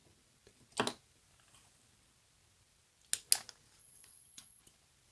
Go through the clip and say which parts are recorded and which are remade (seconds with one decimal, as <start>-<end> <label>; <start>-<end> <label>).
0.0-3.8 recorded; 3.8-4.6 remade; 4.6-5.1 recorded